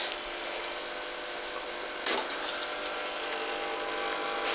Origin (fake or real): real